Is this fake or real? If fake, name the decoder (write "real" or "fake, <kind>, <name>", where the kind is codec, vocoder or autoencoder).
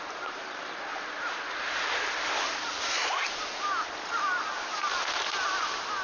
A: real